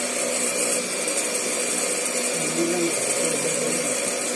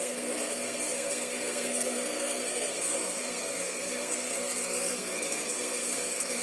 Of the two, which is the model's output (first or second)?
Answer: second